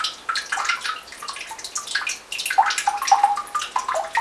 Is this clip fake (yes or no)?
no